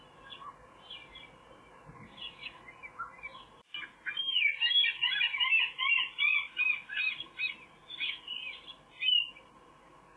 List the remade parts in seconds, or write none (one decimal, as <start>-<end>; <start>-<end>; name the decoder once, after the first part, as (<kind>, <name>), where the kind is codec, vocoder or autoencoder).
none